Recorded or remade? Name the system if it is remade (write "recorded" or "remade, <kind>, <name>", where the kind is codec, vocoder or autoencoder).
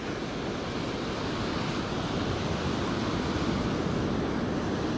recorded